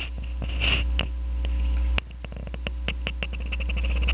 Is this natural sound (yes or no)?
yes